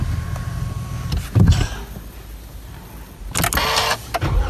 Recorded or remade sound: recorded